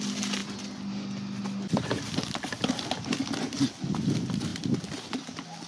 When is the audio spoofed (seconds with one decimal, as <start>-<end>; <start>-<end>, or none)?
none